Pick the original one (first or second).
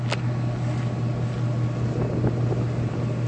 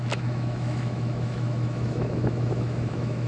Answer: first